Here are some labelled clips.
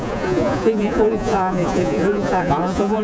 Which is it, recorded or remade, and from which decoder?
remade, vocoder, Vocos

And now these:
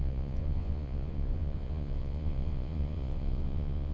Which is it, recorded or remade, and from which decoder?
remade, vocoder, Vocos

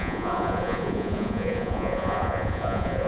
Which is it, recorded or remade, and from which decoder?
remade, vocoder, Vocos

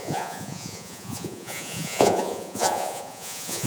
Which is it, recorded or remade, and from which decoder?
remade, vocoder, Vocos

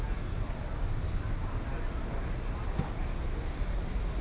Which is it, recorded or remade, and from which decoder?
recorded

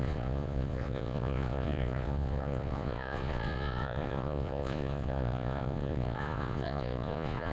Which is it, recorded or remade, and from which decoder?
remade, vocoder, Vocos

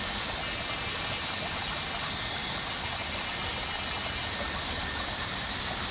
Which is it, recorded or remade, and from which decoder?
recorded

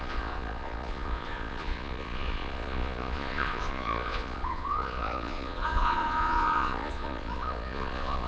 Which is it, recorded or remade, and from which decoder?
remade, vocoder, Vocos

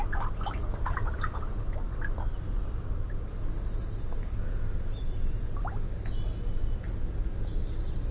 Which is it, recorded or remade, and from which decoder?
recorded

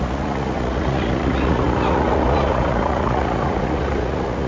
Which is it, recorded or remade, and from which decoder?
remade, vocoder, Vocos